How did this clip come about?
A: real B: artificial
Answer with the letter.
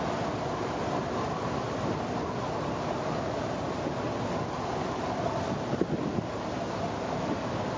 A